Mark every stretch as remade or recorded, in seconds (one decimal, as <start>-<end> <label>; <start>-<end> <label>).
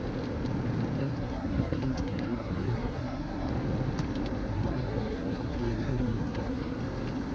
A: 0.0-1.0 recorded; 1.0-3.5 remade; 3.5-4.5 recorded; 4.5-6.8 remade; 6.8-7.3 recorded